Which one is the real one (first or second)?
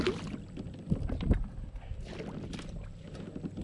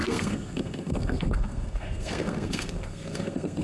first